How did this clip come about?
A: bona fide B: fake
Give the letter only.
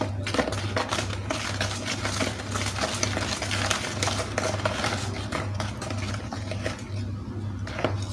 A